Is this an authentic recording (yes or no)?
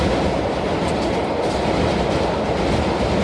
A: yes